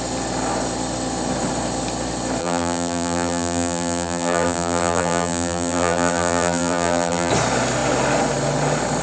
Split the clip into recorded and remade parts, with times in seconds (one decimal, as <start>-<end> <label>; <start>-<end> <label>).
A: 0.0-2.4 recorded; 2.4-7.3 remade; 7.3-9.0 recorded